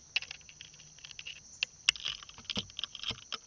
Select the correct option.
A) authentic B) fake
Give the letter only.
A